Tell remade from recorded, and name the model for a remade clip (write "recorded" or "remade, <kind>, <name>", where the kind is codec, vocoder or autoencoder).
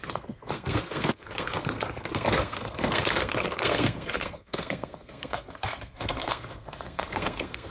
remade, codec, SNAC